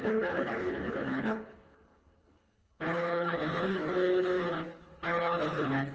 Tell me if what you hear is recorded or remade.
remade